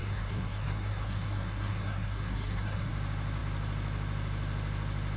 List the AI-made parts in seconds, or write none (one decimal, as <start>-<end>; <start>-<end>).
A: 0.0-2.9